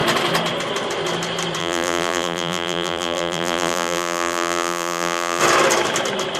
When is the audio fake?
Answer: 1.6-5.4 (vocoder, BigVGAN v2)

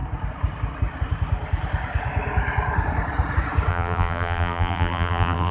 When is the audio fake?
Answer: 3.7-5.5 (vocoder, BigVGAN v2)